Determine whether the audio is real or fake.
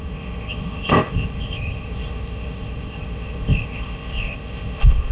fake